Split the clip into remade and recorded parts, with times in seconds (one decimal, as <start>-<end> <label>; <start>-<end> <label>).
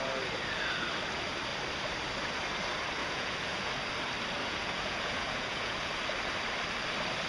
0.0-3.0 recorded; 3.0-3.7 remade; 3.7-4.4 recorded; 4.4-5.9 remade; 5.9-7.3 recorded